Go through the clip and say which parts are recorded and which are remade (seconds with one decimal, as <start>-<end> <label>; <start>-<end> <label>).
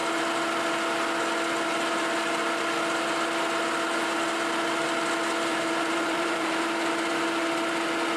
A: 0.0-5.5 recorded; 5.5-6.6 remade; 6.6-8.2 recorded